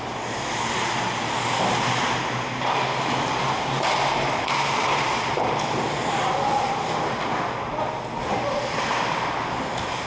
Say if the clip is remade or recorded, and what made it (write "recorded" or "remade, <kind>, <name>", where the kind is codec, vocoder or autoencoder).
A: recorded